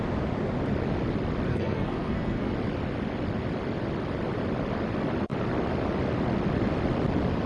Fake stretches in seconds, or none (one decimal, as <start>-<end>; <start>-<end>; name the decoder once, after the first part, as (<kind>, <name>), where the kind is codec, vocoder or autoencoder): 1.5-2.5 (codec, SNAC)